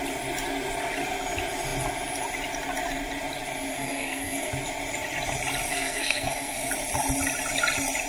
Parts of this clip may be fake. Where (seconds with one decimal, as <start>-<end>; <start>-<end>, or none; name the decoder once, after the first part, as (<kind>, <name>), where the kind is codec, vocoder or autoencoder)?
3.7-4.5 (codec, SNAC); 5.7-6.7